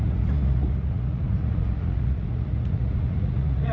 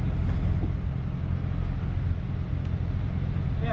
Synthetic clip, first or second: first